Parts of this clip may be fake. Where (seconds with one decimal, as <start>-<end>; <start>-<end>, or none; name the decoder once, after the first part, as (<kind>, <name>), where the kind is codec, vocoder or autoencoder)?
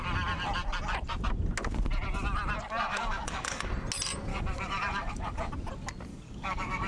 2.9-3.7 (codec, DAC); 4.3-5.4; 6.1-6.9